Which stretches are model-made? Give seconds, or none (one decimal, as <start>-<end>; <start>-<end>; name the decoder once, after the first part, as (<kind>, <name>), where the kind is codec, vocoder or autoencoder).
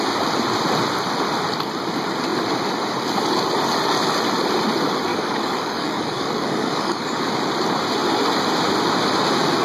5.1-7.3 (codec, DAC)